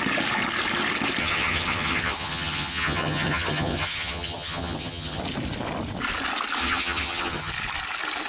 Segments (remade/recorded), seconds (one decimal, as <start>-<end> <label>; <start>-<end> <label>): 0.0-1.2 recorded; 1.2-5.2 remade; 5.2-6.6 recorded; 6.6-7.5 remade; 7.5-8.3 recorded